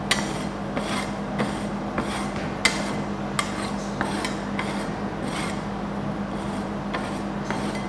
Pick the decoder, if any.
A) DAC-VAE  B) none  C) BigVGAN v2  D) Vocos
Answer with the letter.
B